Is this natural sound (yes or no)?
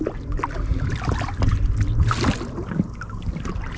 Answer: yes